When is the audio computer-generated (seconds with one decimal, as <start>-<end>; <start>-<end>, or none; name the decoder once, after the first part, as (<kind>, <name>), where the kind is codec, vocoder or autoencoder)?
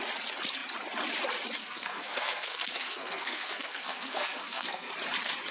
1.6-4.9 (codec, SNAC)